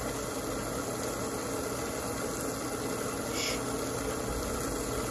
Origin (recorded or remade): recorded